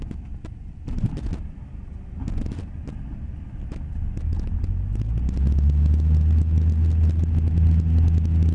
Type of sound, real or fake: real